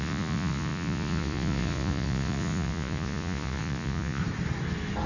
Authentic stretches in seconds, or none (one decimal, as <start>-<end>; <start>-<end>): 4.2-5.1